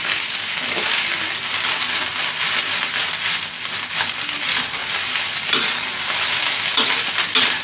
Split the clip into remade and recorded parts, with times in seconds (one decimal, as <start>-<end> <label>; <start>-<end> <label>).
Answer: 0.0-1.2 remade; 1.2-7.6 recorded